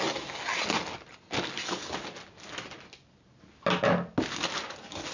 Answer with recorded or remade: recorded